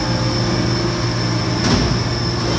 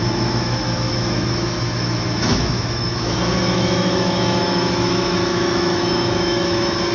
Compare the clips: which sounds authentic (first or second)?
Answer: first